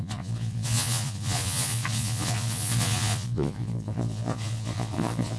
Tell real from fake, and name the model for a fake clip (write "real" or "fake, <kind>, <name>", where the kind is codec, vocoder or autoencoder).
fake, vocoder, Vocos